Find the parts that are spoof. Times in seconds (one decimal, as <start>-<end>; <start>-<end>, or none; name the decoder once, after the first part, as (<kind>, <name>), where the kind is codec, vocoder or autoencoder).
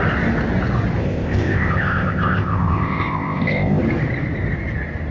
1.0-3.8 (codec, ZipCodec)